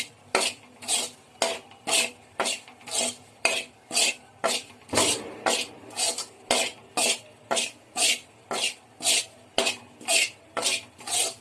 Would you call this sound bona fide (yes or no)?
yes